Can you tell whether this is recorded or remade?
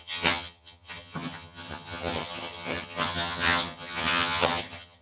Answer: remade